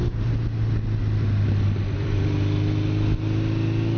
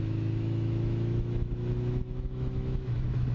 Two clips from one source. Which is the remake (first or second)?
second